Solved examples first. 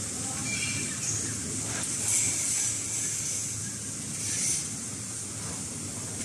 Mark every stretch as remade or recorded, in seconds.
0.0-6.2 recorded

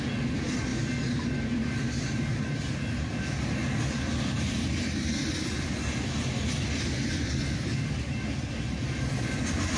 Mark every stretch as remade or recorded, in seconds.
0.0-9.8 recorded

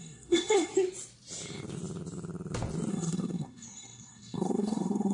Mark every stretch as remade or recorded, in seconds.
0.0-0.7 remade; 0.7-2.9 recorded; 2.9-5.1 remade

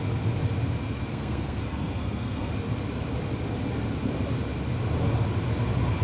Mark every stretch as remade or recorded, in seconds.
0.0-1.1 recorded; 1.1-2.5 remade; 2.5-6.0 recorded

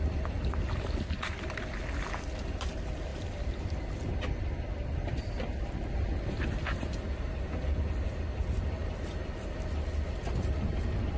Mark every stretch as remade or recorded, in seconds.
0.0-3.1 recorded; 3.1-8.1 remade; 8.1-8.8 recorded; 8.8-10.2 remade; 10.2-11.2 recorded

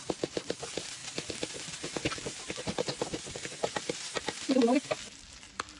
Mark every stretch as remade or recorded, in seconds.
0.0-5.8 recorded